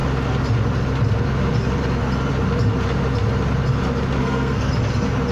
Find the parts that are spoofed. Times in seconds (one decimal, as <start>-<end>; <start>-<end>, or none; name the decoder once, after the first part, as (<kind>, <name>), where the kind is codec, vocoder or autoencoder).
4.2-4.7 (codec, SNAC)